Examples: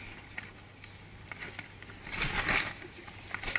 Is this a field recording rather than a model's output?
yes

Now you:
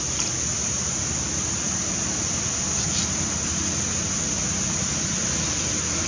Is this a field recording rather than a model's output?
yes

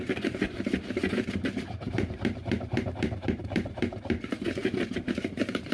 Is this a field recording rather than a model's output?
no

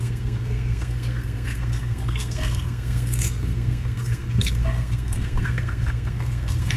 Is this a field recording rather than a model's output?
no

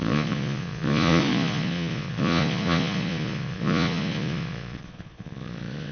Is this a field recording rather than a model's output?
no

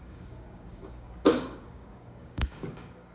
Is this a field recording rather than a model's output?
no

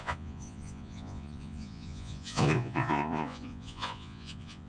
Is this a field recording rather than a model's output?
no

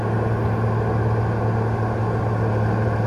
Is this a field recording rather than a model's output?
yes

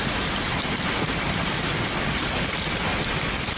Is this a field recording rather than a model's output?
yes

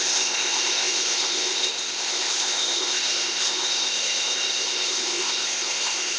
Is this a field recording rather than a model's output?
no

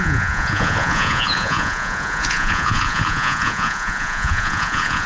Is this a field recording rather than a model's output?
no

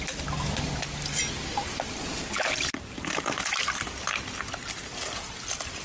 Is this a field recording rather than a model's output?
yes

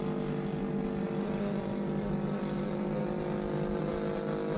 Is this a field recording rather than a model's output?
yes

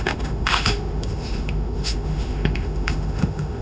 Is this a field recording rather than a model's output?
no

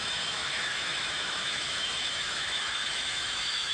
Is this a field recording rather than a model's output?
no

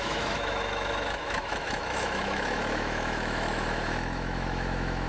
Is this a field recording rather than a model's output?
no